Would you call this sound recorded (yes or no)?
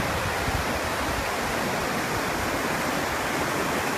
yes